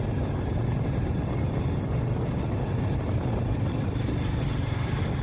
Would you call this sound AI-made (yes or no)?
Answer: no